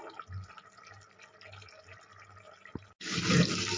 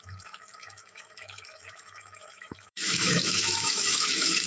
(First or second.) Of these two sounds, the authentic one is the first